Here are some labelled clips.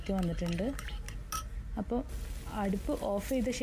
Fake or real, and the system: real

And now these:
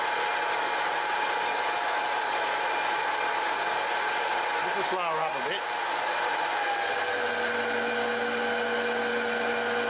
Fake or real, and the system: real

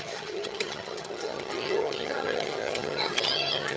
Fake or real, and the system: fake, vocoder, HiFi-GAN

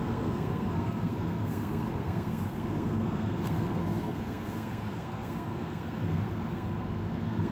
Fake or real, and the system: fake, codec, SNAC